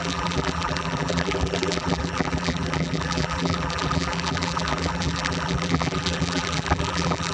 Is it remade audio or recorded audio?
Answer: remade